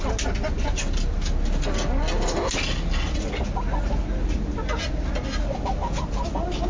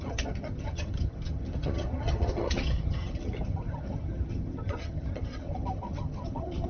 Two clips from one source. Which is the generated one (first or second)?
second